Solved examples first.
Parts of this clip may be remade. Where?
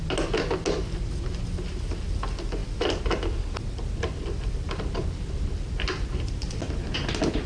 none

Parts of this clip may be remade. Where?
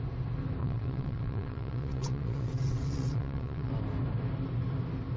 0.6-3.7 (vocoder, WaveNeXt)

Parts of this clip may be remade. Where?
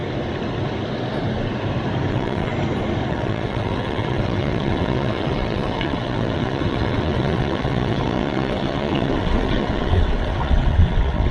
2.1-2.5 (vocoder, WaveNeXt); 3.1-11.3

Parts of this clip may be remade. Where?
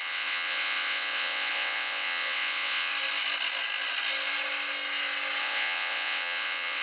0.0-2.9 (vocoder, WaveNeXt); 5.4-6.8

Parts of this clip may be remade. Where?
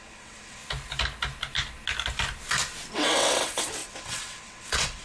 0.0-0.6 (vocoder, WaveNeXt); 2.9-5.0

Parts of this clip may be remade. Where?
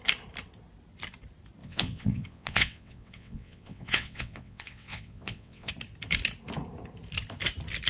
1.6-5.7 (vocoder, WaveNeXt)